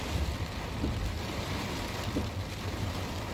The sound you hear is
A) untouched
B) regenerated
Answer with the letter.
A